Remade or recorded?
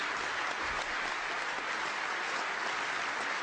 recorded